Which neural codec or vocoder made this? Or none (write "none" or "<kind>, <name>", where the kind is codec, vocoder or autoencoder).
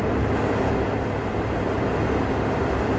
none